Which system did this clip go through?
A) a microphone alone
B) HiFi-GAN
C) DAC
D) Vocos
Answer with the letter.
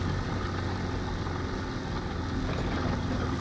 A